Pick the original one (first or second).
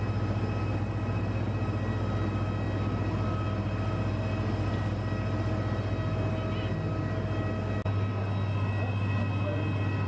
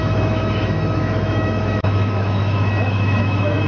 first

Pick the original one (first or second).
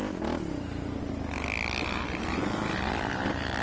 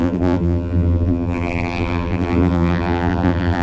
first